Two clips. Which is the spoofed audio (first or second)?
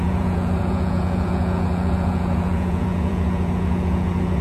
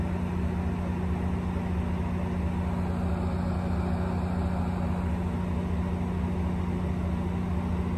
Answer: first